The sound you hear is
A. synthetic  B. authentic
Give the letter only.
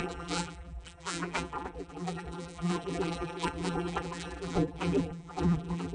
A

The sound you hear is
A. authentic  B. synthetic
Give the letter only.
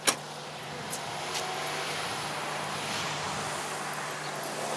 A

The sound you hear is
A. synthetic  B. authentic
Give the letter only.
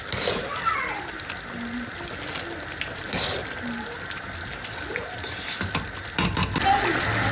B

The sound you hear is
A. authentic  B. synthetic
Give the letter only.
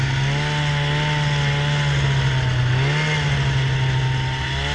A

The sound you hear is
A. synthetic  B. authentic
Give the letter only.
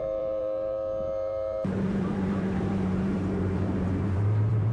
A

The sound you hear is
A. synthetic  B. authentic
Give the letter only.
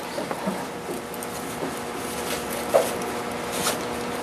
B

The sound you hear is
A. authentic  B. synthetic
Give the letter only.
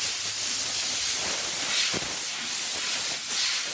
A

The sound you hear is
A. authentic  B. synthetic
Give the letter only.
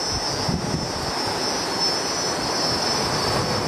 A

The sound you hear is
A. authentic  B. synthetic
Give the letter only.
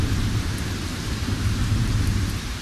B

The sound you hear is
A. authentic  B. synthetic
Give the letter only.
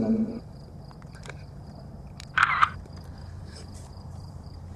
B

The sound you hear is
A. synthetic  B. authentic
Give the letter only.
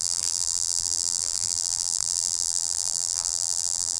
A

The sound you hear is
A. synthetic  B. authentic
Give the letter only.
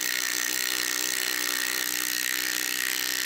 B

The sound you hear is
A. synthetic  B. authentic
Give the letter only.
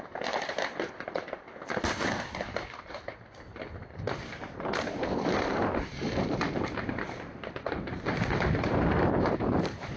A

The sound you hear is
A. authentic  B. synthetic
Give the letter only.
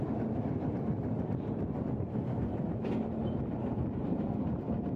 A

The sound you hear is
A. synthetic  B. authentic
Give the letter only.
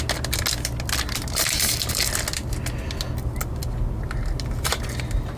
B